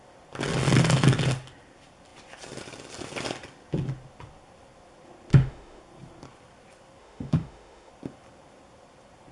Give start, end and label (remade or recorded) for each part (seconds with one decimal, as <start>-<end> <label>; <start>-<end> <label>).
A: 0.0-5.3 recorded; 5.3-5.8 remade; 5.8-7.0 recorded; 7.0-7.9 remade; 7.9-9.3 recorded